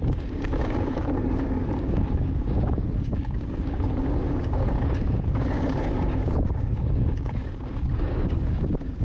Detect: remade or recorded remade